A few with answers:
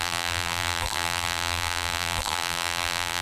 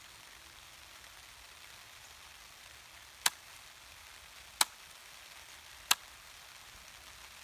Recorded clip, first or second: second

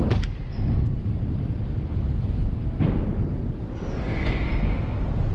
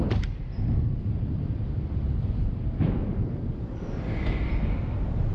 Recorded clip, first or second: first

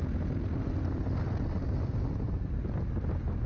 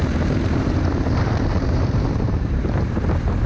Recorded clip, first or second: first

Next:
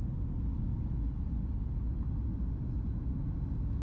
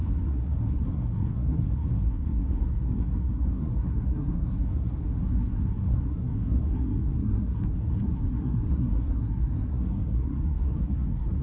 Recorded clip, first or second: first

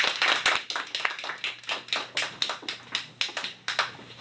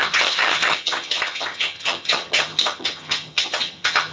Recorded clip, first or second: first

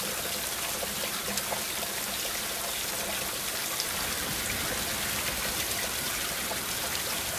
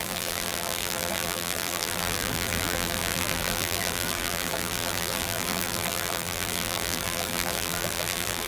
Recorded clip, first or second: first